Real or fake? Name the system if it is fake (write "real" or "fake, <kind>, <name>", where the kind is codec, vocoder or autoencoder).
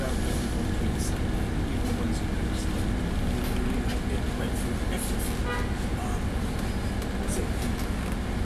real